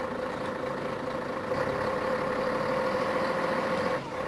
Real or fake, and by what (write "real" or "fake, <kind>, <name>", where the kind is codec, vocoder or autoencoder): real